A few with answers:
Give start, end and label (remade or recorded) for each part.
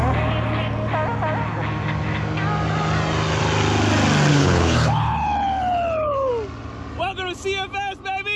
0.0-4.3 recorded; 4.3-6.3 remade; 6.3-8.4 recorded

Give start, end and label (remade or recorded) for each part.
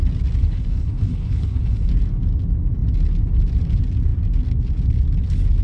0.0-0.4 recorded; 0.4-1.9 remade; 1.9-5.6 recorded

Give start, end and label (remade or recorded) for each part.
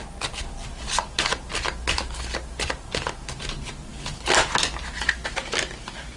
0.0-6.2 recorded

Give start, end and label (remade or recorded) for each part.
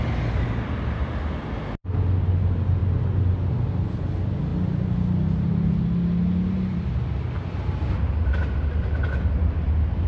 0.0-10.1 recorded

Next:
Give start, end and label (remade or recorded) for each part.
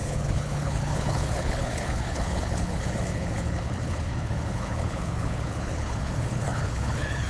0.0-7.3 remade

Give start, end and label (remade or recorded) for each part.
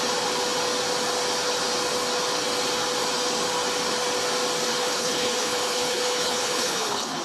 0.0-4.7 recorded; 4.7-7.2 remade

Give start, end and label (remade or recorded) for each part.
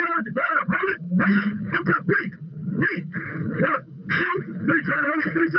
0.0-5.6 remade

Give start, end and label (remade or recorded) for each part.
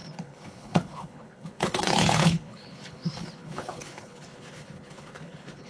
0.0-5.7 remade